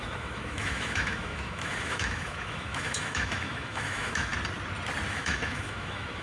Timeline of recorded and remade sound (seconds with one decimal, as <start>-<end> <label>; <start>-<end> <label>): 0.0-4.3 remade; 4.3-5.1 recorded; 5.1-6.2 remade